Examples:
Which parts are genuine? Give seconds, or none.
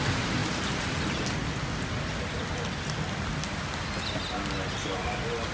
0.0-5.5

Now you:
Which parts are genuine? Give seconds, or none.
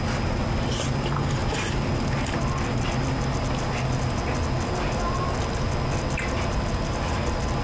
0.0-7.6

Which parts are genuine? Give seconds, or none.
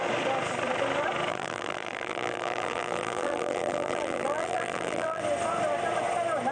0.0-1.3; 5.2-6.5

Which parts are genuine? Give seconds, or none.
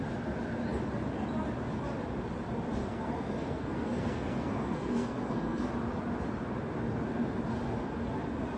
0.0-2.8; 5.7-8.6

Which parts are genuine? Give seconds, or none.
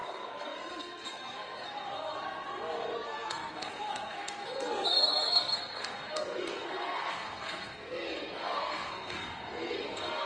none